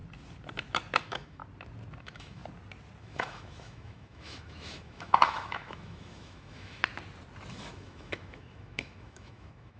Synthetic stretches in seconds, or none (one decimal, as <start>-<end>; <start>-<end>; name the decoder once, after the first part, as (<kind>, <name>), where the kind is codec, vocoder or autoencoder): 1.0-1.4 (autoencoder, DAC-VAE); 2.0-2.4; 3.0-6.8; 7.5-9.8